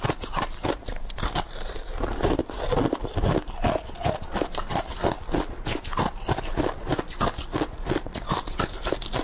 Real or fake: real